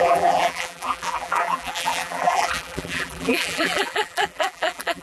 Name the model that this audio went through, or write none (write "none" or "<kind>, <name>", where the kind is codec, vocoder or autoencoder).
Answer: vocoder, BigVGAN v2